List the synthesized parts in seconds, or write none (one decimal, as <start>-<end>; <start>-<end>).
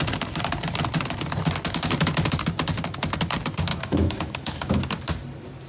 3.7-4.8